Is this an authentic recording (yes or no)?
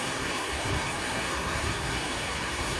no